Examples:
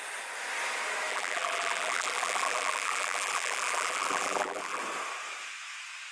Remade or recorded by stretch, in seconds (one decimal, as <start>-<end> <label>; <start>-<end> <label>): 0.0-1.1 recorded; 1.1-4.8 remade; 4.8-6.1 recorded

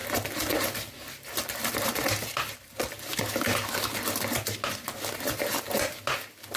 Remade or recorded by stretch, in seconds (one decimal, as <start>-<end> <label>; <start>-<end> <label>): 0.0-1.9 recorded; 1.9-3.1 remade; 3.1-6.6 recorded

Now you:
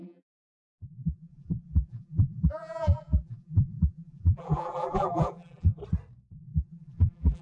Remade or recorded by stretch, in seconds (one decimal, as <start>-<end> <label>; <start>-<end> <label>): 0.0-5.8 remade; 5.8-6.3 recorded; 6.3-7.4 remade

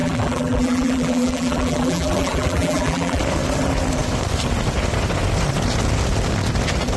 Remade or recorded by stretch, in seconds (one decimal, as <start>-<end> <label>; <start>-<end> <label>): 0.0-3.2 remade; 3.2-7.0 recorded

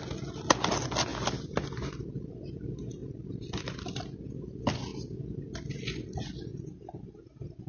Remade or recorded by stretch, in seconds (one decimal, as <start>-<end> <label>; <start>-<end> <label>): 0.0-3.0 recorded; 3.0-3.5 remade; 3.5-7.7 recorded

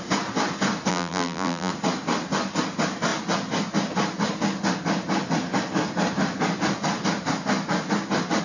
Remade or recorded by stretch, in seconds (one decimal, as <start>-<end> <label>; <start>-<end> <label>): 0.0-0.9 recorded; 0.9-1.7 remade; 1.7-8.4 recorded

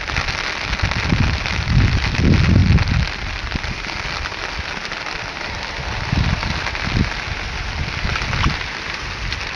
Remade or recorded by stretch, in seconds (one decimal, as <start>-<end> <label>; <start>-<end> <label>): 0.0-2.6 recorded; 2.6-3.3 remade; 3.3-9.6 recorded

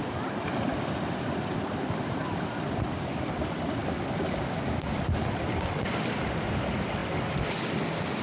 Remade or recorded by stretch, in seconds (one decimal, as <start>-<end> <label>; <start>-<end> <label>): 0.0-3.8 remade; 3.8-4.6 recorded; 4.6-7.0 remade; 7.0-8.2 recorded